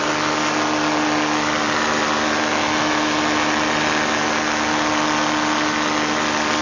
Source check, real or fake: real